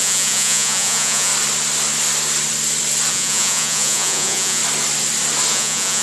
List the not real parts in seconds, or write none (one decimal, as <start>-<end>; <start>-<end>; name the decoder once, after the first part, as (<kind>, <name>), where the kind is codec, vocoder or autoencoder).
0.0-1.3 (vocoder, Vocos); 3.1-4.6; 5.5-6.0